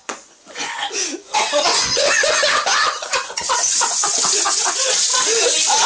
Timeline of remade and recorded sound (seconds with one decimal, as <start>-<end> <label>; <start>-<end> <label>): 0.0-5.1 remade; 5.1-5.9 recorded

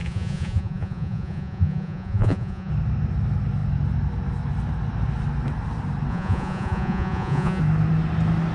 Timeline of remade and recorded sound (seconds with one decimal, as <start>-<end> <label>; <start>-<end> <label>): 0.0-2.7 remade; 2.7-6.1 recorded; 6.1-7.6 remade; 7.6-8.5 recorded

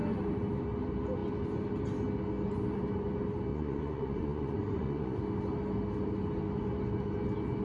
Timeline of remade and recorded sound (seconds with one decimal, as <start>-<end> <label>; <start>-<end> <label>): 0.0-3.5 recorded; 3.5-5.2 remade; 5.2-7.6 recorded

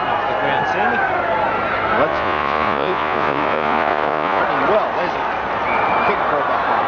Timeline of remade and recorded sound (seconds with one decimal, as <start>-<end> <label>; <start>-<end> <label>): 0.0-2.1 recorded; 2.1-4.4 remade; 4.4-6.9 recorded

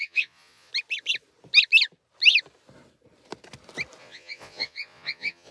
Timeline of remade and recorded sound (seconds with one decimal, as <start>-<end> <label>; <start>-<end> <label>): 0.0-0.7 remade; 0.7-4.0 recorded; 4.0-5.5 remade

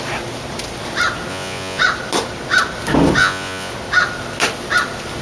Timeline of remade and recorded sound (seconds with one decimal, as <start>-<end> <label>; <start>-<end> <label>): 0.0-1.3 recorded; 1.3-1.8 remade; 1.8-3.2 recorded; 3.2-3.7 remade; 3.7-5.2 recorded

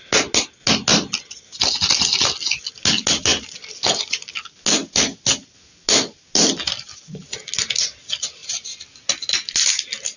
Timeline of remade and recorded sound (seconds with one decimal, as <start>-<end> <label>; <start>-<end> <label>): 0.0-10.2 recorded

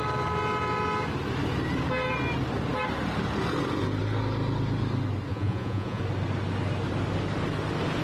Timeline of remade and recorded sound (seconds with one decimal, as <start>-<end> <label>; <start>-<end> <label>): 0.0-5.3 recorded; 5.3-6.0 remade; 6.0-8.0 recorded